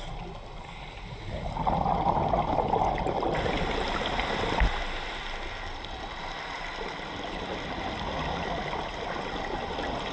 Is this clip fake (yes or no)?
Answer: no